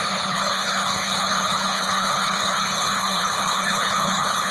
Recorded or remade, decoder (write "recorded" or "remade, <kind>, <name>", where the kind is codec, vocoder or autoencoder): remade, codec, HILCodec